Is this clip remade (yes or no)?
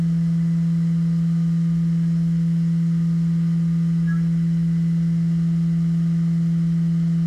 no